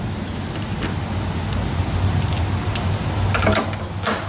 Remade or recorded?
recorded